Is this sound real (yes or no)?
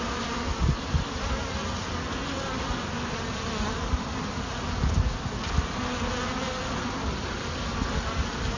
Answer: yes